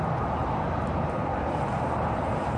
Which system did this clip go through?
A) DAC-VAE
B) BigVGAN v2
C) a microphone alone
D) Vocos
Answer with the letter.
B